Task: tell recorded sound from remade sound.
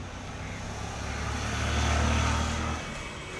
recorded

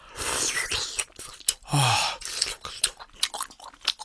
recorded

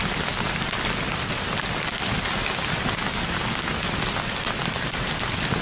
recorded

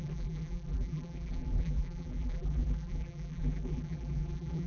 remade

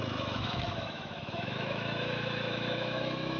remade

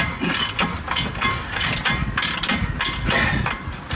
recorded